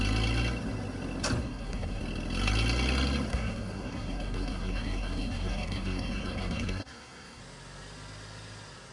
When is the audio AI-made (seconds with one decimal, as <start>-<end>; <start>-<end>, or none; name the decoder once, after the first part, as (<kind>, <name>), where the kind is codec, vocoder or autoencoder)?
1.4-2.0 (codec, SNAC); 3.3-7.4